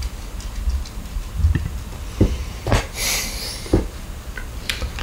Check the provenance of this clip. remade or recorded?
recorded